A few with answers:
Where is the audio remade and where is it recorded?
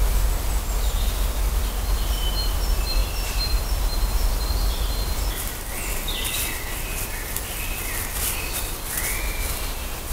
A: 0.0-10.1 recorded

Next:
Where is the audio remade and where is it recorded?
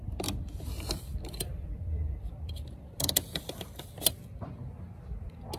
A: 0.0-3.2 remade; 3.2-5.6 recorded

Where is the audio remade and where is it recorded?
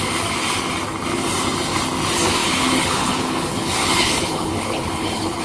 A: 0.0-2.4 recorded; 2.4-5.4 remade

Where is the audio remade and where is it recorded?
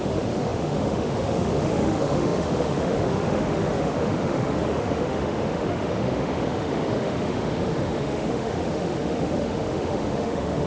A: 0.0-10.7 remade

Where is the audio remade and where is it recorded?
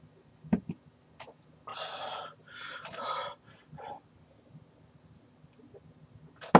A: 0.0-6.6 recorded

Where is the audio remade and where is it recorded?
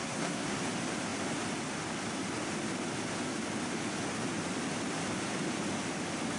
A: 0.0-0.6 remade; 0.6-6.4 recorded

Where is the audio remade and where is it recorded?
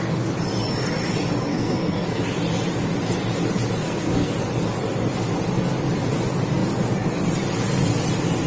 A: 0.0-1.5 recorded; 1.5-2.2 remade; 2.2-3.8 recorded; 3.8-4.3 remade; 4.3-8.5 recorded